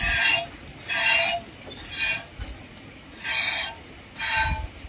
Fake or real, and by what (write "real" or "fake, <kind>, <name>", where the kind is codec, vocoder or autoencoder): real